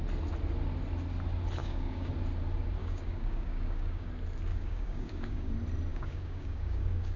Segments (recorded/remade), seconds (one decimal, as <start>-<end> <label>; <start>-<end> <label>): 0.0-1.6 recorded; 1.6-2.1 remade; 2.1-2.8 recorded; 2.8-4.1 remade; 4.1-4.5 recorded; 4.5-5.5 remade; 5.5-5.9 recorded; 5.9-7.2 remade